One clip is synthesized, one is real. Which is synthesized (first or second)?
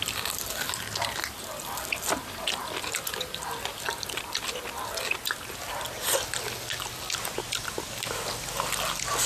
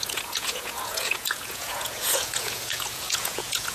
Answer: second